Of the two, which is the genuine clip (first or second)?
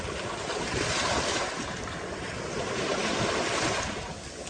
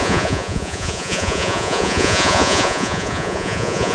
first